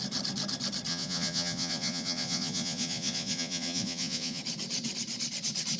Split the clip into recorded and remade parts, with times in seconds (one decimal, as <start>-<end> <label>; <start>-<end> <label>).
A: 0.0-0.9 recorded; 0.9-4.4 remade; 4.4-5.8 recorded